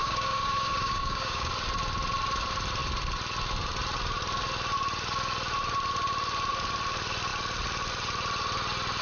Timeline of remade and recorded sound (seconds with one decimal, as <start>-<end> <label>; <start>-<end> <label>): 0.0-1.5 remade; 1.5-9.0 recorded